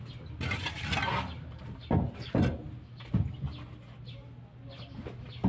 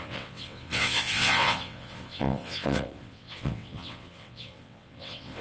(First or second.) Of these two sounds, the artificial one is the second